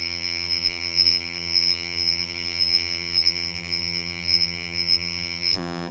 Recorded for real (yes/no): no